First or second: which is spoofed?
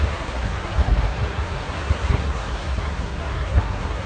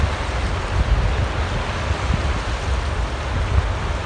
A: first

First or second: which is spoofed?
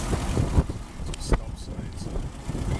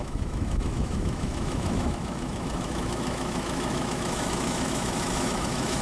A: second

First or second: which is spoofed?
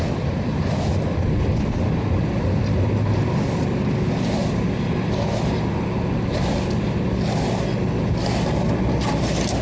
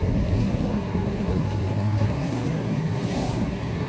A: second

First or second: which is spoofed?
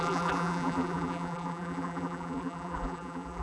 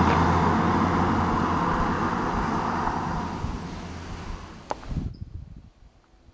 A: first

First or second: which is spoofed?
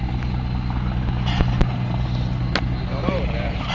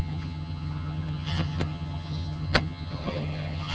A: second